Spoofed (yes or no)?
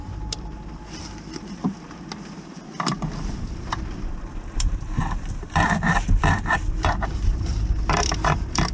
yes